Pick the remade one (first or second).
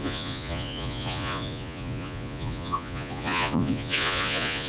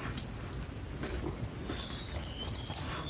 first